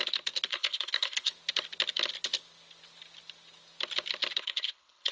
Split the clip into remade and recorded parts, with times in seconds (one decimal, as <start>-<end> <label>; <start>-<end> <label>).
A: 0.0-0.5 recorded; 0.5-1.3 remade; 1.3-4.4 recorded; 4.4-5.1 remade